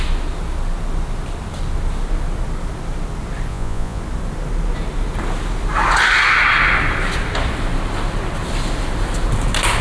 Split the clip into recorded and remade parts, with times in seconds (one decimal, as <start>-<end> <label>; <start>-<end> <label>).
0.0-3.5 recorded; 3.5-4.0 remade; 4.0-9.8 recorded